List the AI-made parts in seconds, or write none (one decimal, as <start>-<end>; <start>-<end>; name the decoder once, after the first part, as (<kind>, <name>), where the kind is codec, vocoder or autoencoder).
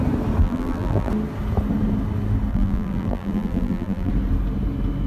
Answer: 0.4-1.1 (vocoder, BigVGAN v2); 2.5-4.1